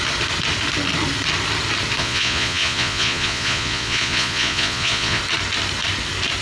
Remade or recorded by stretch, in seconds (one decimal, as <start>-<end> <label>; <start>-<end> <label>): 0.0-2.0 recorded; 2.0-5.2 remade; 5.2-6.4 recorded